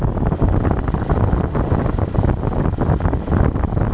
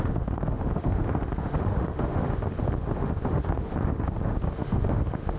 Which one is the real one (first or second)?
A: first